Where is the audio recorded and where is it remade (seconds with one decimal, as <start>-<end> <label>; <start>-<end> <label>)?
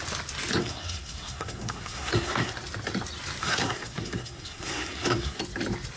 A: 0.0-0.6 recorded; 0.6-2.5 remade; 2.5-3.4 recorded; 3.4-5.4 remade; 5.4-6.0 recorded